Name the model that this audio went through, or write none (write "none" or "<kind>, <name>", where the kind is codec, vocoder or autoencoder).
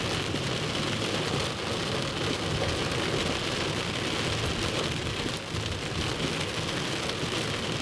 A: none